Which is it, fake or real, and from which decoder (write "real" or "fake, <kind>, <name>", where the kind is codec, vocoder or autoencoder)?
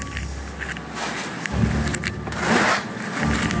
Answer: real